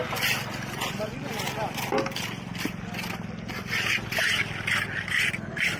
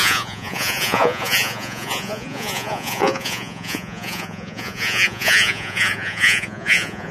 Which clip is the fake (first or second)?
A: second